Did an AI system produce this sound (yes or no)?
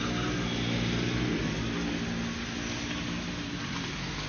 no